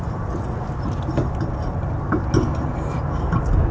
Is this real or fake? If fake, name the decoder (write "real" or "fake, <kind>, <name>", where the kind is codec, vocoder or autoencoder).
real